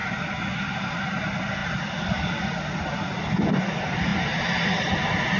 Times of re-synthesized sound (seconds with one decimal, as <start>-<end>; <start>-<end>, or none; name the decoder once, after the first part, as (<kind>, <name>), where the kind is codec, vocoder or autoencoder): 1.6-3.6 (vocoder, BigVGAN v2)